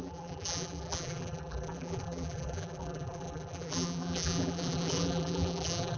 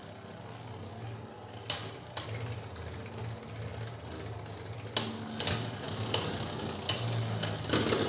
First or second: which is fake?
first